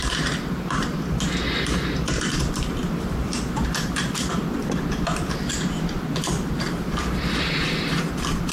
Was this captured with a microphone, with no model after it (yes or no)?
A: no